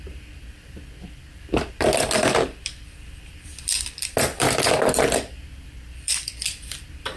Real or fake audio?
fake